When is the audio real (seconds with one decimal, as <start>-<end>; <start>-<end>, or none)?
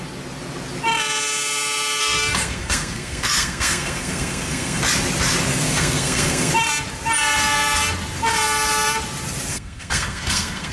0.0-2.0; 4.8-5.5; 6.5-9.5